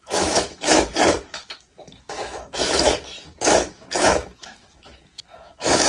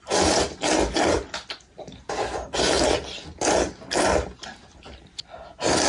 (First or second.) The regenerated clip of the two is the first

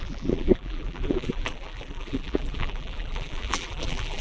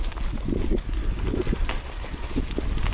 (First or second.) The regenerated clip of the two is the first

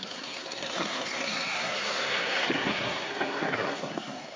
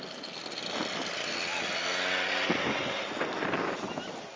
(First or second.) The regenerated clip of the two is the first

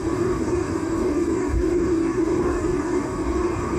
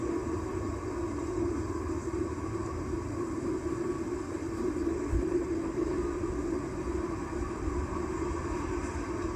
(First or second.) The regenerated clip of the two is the first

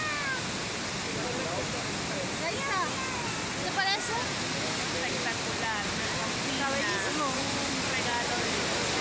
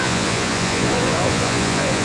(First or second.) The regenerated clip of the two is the second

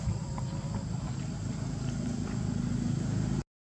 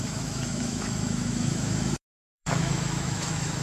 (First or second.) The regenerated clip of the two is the second